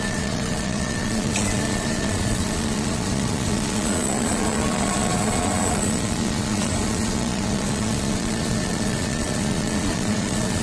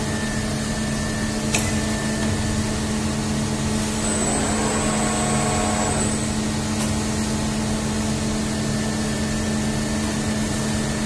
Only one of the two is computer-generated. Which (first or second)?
first